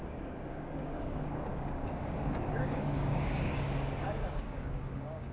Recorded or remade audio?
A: remade